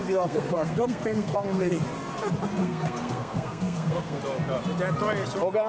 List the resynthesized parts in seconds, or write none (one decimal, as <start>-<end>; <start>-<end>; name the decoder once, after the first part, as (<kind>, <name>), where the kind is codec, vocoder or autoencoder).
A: 0.0-1.7 (codec, SNAC); 2.6-4.2

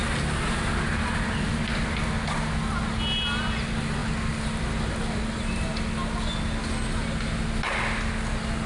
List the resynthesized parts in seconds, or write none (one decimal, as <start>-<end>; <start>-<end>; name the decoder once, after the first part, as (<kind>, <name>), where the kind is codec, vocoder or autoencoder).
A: none